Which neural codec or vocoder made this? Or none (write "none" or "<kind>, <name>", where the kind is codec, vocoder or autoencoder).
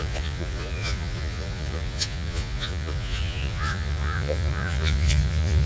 vocoder, Vocos